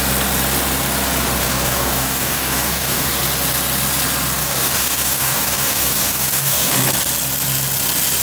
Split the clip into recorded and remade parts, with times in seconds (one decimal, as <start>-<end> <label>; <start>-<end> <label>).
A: 0.0-1.4 recorded; 1.4-3.1 remade; 3.1-4.4 recorded; 4.4-6.7 remade; 6.7-8.2 recorded